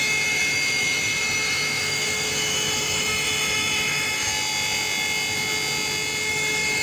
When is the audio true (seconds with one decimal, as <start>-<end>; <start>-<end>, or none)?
4.3-6.3